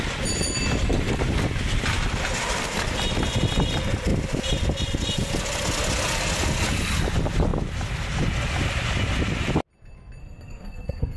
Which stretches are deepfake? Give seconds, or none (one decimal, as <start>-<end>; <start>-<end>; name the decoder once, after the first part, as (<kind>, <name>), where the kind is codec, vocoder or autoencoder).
10.2-11.2 (codec, SNAC)